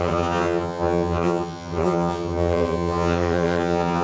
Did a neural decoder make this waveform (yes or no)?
yes